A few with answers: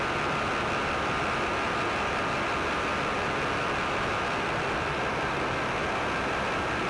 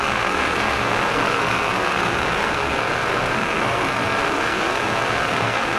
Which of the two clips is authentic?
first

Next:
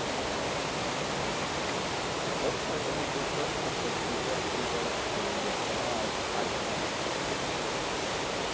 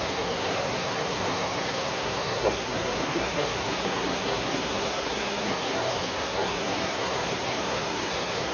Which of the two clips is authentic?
first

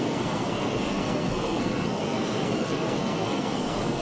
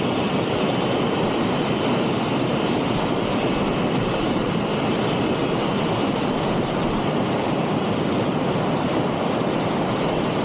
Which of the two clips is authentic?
second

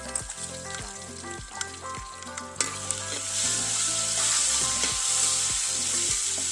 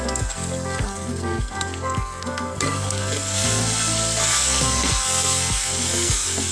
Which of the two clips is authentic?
first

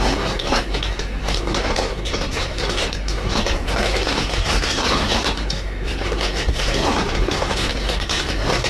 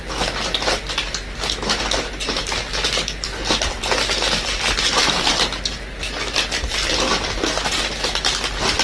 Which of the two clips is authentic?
second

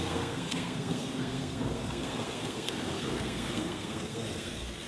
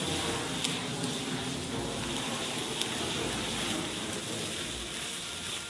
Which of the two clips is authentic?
second